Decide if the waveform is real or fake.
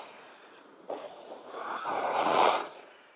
fake